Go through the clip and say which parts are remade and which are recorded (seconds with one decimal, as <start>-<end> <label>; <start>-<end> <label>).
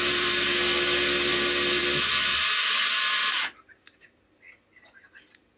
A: 0.0-5.6 recorded